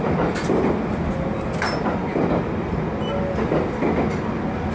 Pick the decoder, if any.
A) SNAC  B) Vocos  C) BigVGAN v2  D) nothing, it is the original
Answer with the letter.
D